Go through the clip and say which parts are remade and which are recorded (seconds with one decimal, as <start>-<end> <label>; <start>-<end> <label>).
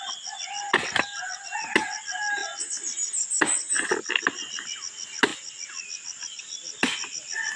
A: 0.0-7.6 recorded